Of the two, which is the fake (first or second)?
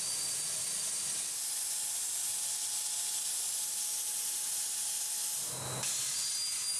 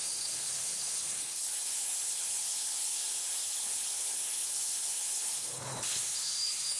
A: second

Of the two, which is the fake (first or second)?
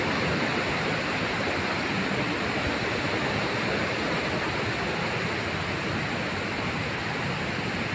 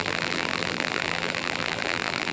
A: second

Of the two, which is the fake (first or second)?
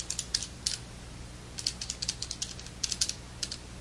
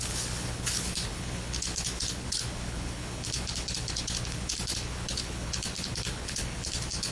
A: second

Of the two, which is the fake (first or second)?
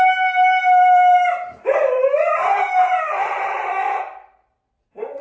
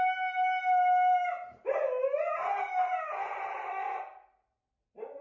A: first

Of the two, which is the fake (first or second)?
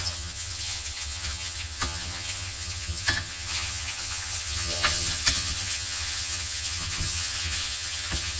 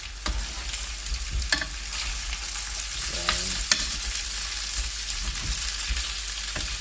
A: first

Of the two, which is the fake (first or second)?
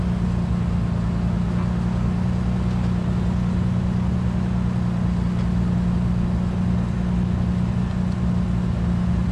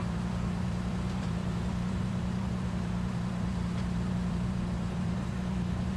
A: second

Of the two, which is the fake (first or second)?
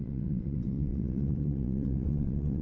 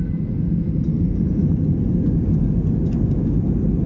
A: first